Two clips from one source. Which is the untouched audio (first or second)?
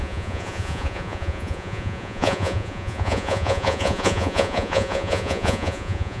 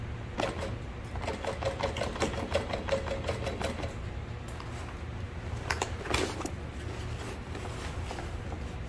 second